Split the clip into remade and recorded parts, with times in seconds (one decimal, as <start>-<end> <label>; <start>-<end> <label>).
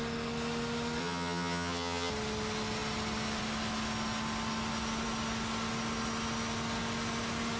0.0-1.0 recorded; 1.0-2.1 remade; 2.1-7.6 recorded